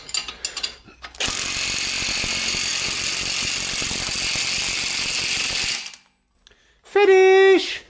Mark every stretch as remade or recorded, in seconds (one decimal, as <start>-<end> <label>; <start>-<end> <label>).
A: 0.0-7.9 recorded